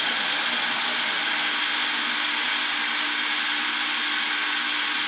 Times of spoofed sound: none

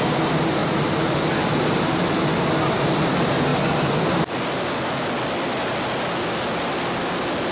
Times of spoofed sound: none

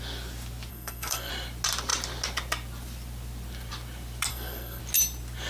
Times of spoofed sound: 0.7-1.3 (codec, SNAC); 4.3-4.8

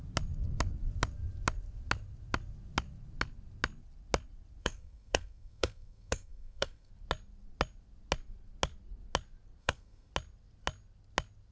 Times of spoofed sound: 4.6-6.9 (codec, SNAC); 9.6-10.1